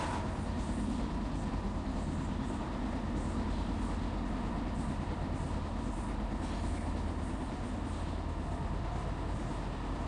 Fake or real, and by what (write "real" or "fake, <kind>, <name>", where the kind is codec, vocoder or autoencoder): real